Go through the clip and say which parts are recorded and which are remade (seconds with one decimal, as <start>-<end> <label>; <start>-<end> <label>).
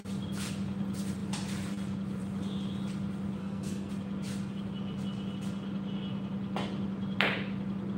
0.0-3.4 recorded; 3.4-3.9 remade; 3.9-8.0 recorded